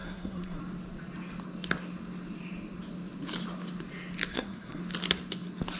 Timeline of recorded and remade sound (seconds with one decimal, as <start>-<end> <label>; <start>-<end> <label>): 0.0-0.6 remade; 0.6-4.3 recorded; 4.3-4.8 remade; 4.8-5.8 recorded

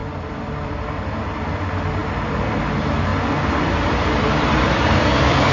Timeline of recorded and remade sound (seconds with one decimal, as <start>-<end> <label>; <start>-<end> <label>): 0.0-2.0 remade; 2.0-2.7 recorded; 2.7-3.1 remade; 3.1-3.6 recorded; 3.6-5.5 remade

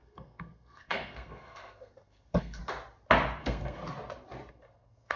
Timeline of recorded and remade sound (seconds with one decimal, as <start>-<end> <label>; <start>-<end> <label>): 0.0-2.6 remade; 2.6-3.4 recorded; 3.4-3.8 remade; 3.8-4.5 recorded; 4.5-5.2 remade

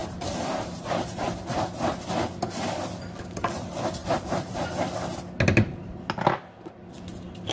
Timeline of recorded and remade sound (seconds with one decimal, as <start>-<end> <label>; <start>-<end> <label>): 0.0-1.2 remade; 1.2-4.0 recorded; 4.0-4.7 remade; 4.7-7.5 recorded

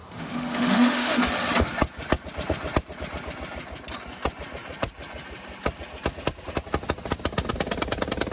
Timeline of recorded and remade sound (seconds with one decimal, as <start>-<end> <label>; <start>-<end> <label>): 0.0-1.2 remade; 1.2-8.3 recorded

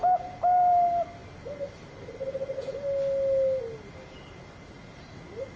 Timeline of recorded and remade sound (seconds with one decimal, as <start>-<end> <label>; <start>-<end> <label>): 0.0-5.6 recorded